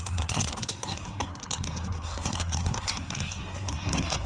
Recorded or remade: remade